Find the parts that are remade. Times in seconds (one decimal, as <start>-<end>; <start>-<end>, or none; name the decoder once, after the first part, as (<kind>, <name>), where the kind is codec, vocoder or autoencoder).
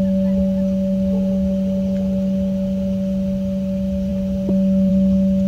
none